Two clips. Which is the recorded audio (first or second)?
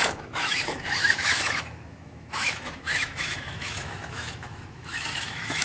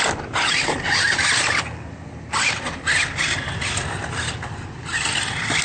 second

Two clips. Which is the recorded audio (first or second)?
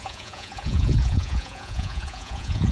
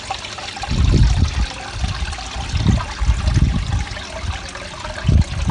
second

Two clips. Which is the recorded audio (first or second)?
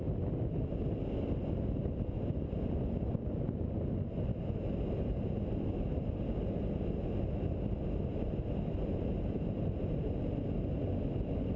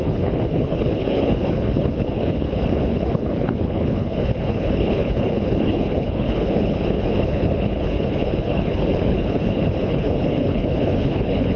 first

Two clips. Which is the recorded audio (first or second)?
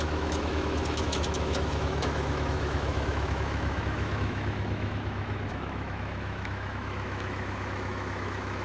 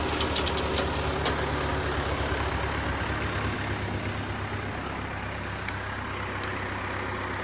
second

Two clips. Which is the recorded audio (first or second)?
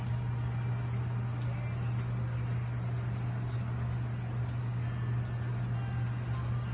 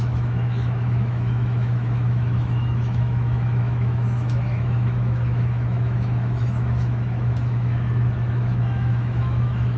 first